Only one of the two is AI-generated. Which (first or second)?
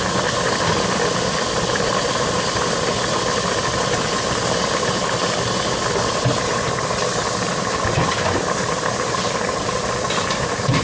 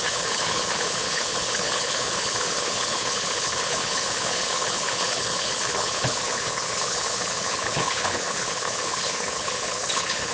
second